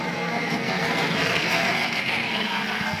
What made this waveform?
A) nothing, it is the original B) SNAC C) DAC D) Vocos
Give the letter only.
B